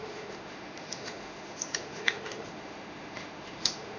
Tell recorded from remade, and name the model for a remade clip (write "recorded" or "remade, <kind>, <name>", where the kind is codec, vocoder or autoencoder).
remade, autoencoder, DAC-VAE